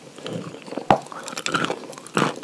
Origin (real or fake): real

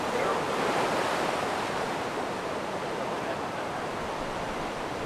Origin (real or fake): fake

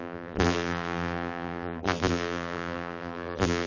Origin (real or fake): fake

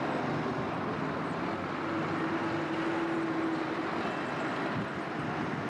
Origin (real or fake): real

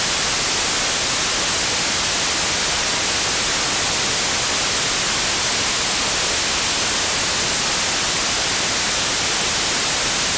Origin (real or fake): real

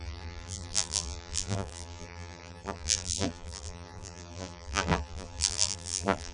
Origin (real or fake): fake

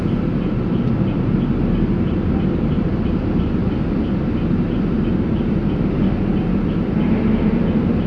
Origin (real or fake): real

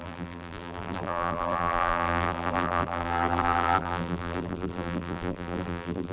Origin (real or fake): fake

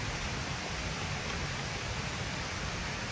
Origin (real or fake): real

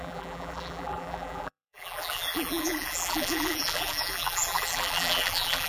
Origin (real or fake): fake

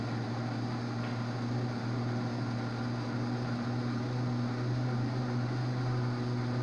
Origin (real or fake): real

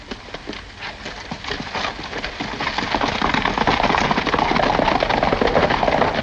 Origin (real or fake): real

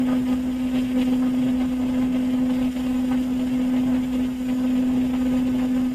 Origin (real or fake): real